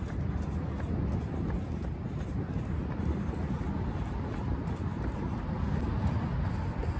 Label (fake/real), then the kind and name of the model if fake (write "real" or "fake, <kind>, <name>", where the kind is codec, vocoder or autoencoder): real